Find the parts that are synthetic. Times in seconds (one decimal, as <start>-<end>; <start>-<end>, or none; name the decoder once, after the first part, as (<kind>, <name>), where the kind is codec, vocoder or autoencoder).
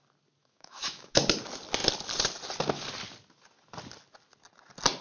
0.4-1.2 (autoencoder, DAC-VAE)